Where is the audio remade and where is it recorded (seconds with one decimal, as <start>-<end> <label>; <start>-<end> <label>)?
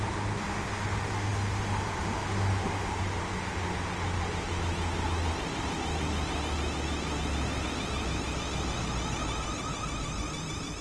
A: 0.0-10.8 recorded